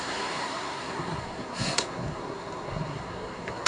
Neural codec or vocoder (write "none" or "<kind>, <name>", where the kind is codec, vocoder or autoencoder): codec, SNAC